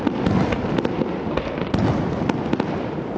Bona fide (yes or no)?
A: yes